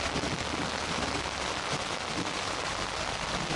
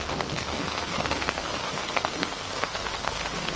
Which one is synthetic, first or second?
second